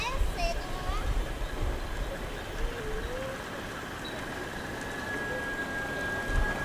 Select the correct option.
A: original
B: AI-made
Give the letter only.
A